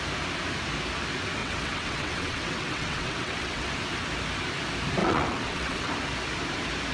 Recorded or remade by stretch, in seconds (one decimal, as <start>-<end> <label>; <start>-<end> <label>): 0.0-1.4 recorded; 1.4-3.7 remade; 3.7-5.0 recorded; 5.0-5.9 remade; 5.9-6.9 recorded